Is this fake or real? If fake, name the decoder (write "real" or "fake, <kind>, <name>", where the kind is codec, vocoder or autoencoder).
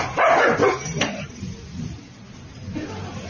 real